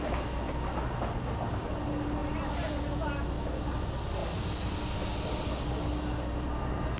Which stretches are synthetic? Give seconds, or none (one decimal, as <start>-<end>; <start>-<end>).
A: none